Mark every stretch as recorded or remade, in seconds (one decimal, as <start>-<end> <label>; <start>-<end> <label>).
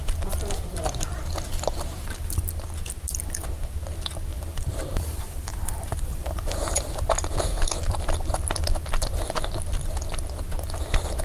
0.0-4.3 recorded; 4.3-6.9 remade; 6.9-11.2 recorded